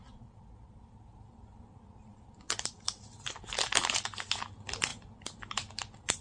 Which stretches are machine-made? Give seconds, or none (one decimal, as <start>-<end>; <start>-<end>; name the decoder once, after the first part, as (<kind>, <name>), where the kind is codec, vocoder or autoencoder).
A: none